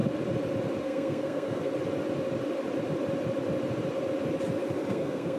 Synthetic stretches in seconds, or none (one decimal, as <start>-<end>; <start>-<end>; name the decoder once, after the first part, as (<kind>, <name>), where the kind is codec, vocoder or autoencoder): 0.8-1.7 (codec, SNAC); 4.9-5.4